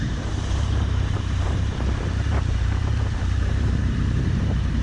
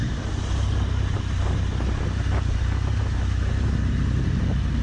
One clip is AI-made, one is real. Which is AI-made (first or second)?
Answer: first